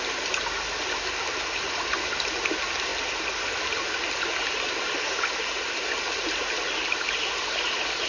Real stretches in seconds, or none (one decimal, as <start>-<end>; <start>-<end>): 0.0-8.1